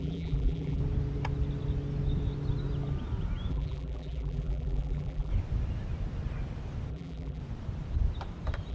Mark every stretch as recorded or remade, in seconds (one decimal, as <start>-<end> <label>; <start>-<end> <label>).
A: 0.0-0.8 remade; 0.8-3.5 recorded; 3.5-5.3 remade; 5.3-6.9 recorded; 6.9-7.4 remade; 7.4-8.7 recorded